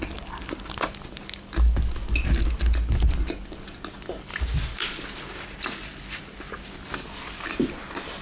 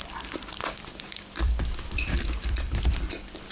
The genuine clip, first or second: first